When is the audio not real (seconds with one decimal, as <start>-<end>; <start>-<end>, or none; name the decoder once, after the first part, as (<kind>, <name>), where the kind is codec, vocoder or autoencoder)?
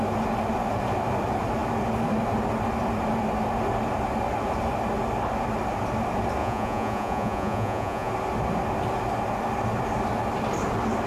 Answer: 6.4-8.1 (vocoder, Vocos)